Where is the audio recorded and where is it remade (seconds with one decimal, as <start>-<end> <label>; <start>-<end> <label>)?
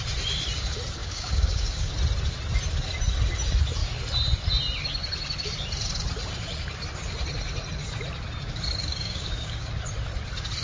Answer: 0.0-1.0 recorded; 1.0-1.9 remade; 1.9-8.8 recorded; 8.8-9.7 remade; 9.7-10.6 recorded